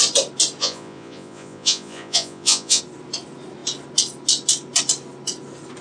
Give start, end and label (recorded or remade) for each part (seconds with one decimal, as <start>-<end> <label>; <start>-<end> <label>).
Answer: 0.0-0.6 recorded; 0.6-2.8 remade; 2.8-5.8 recorded